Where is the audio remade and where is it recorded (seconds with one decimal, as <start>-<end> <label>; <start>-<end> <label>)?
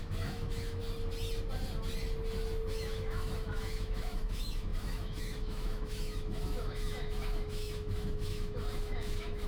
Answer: 0.0-0.8 remade; 0.8-2.7 recorded; 2.7-9.5 remade